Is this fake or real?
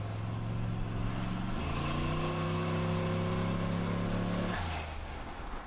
real